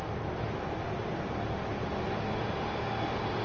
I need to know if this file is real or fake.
real